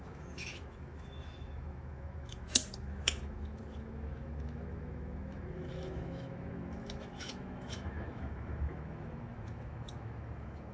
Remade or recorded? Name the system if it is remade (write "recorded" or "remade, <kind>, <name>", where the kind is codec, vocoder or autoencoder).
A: remade, autoencoder, DAC-VAE